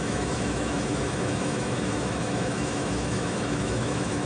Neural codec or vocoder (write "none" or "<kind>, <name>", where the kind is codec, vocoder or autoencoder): autoencoder, DAC-VAE